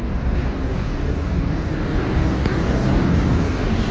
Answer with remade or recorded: remade